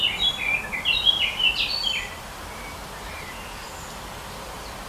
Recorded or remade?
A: remade